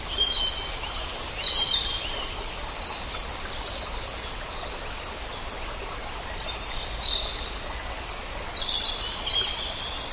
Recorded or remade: recorded